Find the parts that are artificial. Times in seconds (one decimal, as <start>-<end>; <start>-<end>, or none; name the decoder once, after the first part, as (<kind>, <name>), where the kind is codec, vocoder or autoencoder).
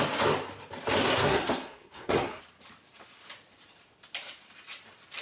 1.0-2.4 (codec, SNAC)